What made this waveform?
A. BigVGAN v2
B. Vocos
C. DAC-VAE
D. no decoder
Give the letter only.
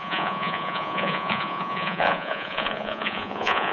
B